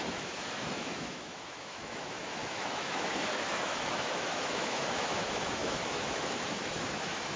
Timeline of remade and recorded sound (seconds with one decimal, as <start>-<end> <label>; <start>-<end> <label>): 0.0-7.4 remade